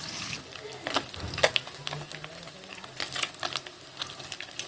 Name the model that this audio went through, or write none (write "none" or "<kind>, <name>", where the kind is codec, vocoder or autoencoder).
none